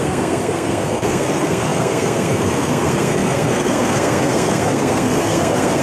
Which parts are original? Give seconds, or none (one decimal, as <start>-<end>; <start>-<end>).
none